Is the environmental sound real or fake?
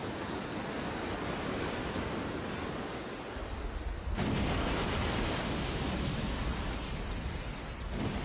real